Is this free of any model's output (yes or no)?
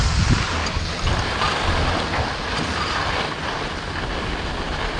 yes